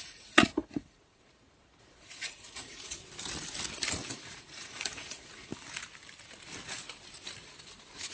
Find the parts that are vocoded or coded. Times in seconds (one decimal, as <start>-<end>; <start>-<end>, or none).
0.0-3.0; 4.1-5.5